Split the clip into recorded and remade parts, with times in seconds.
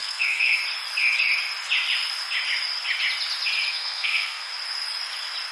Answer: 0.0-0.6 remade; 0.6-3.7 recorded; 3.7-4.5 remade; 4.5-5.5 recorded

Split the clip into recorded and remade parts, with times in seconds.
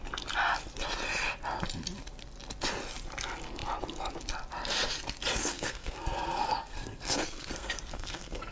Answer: 0.0-5.4 recorded; 5.4-8.5 remade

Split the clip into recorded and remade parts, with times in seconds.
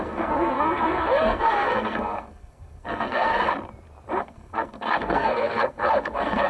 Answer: 0.0-3.3 remade; 3.3-4.2 recorded; 4.2-6.5 remade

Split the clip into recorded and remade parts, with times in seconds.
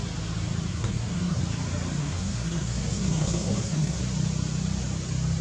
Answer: 0.0-0.7 recorded; 0.7-1.4 remade; 1.4-2.0 recorded; 2.0-4.0 remade; 4.0-5.4 recorded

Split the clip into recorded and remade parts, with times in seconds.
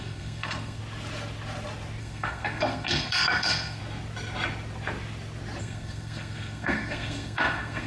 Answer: 0.0-0.8 remade; 0.8-2.0 recorded; 2.0-3.8 remade; 3.8-5.6 recorded; 5.6-7.9 remade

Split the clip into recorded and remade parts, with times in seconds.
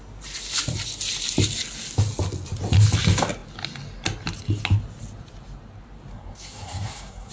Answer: 0.0-6.1 recorded; 6.1-7.3 remade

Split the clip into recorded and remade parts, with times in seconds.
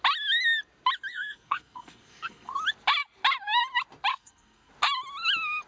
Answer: 0.0-1.1 recorded; 1.1-2.5 remade; 2.5-4.1 recorded; 4.1-4.7 remade; 4.7-5.7 recorded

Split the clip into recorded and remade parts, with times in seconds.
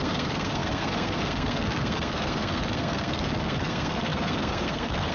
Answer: 0.0-5.1 remade